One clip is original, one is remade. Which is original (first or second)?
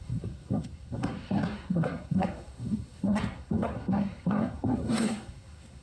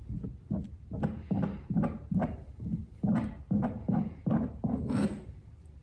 second